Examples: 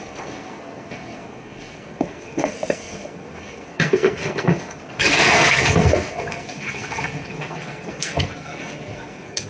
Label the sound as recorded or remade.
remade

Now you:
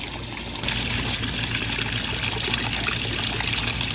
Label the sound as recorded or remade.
recorded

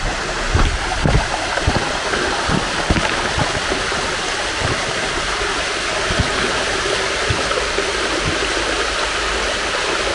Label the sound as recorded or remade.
recorded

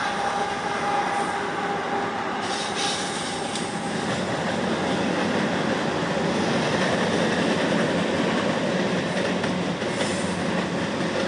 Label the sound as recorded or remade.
recorded